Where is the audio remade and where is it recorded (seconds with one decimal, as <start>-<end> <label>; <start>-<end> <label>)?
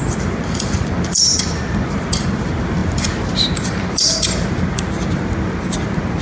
0.0-6.2 remade